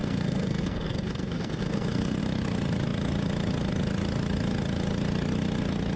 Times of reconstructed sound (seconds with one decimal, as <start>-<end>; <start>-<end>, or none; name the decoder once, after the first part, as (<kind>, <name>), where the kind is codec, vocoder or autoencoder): 0.0-2.2 (codec, SNAC)